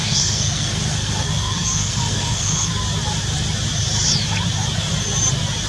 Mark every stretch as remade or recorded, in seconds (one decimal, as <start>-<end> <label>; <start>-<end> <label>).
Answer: 0.0-2.7 remade; 2.7-5.7 recorded